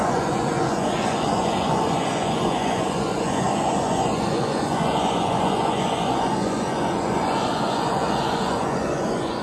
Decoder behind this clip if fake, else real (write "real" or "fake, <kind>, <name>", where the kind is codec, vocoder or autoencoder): fake, vocoder, Vocos